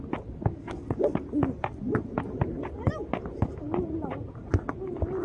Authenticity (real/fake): real